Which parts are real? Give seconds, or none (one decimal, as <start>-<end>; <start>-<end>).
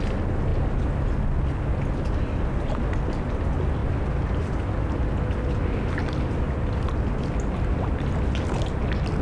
0.0-9.2